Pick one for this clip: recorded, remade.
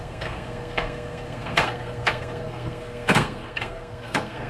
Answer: remade